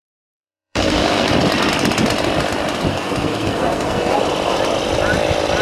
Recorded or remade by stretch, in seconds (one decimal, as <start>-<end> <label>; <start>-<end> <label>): 0.0-1.3 remade; 1.3-2.9 recorded; 2.9-4.2 remade; 4.2-5.6 recorded